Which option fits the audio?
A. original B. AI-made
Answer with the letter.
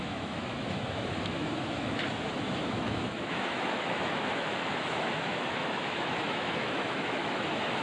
B